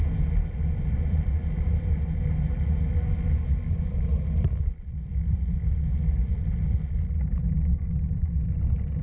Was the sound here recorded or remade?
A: recorded